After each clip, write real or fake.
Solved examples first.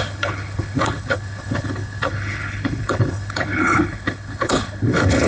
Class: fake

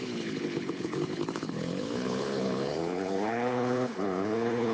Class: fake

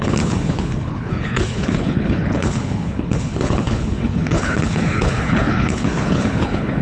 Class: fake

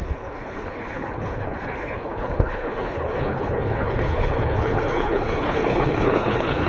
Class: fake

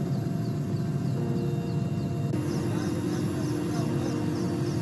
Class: real